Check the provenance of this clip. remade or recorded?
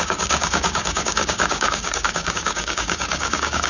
remade